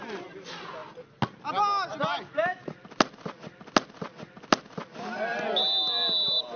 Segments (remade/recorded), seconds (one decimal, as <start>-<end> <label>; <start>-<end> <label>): 0.0-6.6 recorded